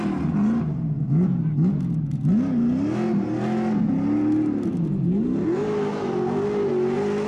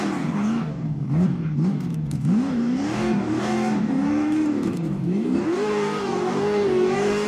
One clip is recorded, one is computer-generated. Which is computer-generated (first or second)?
second